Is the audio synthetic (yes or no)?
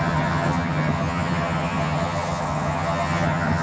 yes